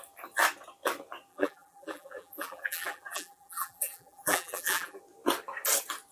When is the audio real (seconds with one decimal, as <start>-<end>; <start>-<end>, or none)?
0.0-1.3; 5.0-6.1

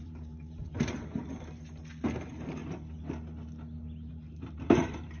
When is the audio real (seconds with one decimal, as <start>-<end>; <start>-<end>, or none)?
1.2-2.0; 2.6-4.1

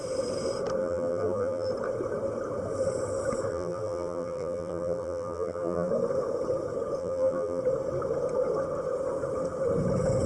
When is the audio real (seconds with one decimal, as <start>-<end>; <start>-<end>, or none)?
0.0-0.8; 1.7-3.5; 5.9-7.0; 7.6-10.3